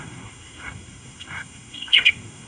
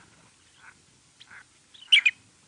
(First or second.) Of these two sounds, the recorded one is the second